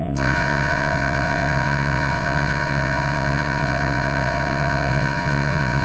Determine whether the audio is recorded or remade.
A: remade